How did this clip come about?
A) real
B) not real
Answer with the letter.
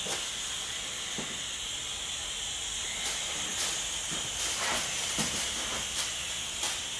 B